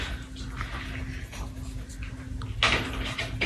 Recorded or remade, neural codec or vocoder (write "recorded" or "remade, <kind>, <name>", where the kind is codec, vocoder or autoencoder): recorded